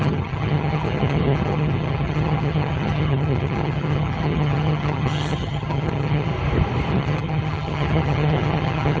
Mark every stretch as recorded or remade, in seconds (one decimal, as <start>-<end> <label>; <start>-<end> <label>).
0.0-6.3 remade; 6.3-6.9 recorded; 6.9-9.0 remade